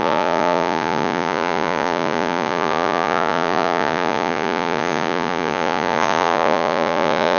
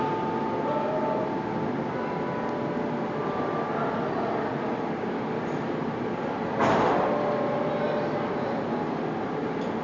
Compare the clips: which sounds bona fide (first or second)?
second